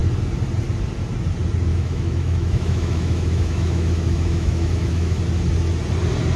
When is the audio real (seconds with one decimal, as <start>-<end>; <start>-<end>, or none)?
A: 0.0-1.7; 5.2-6.4